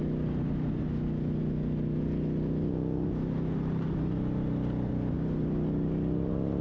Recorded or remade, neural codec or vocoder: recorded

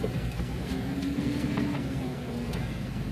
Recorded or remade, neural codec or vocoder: remade, codec, SNAC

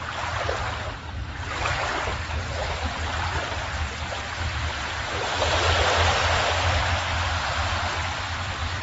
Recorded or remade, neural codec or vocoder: recorded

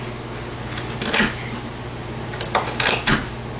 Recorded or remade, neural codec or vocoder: recorded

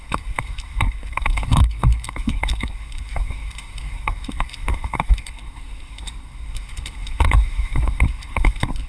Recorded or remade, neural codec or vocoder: remade, codec, SNAC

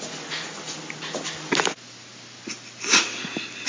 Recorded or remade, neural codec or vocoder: recorded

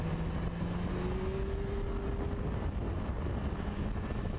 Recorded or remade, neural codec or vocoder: recorded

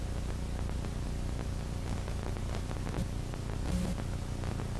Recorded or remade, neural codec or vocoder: recorded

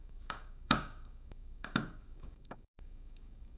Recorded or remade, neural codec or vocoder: remade, codec, DAC